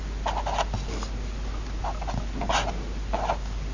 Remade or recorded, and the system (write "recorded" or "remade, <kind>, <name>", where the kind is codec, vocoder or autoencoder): recorded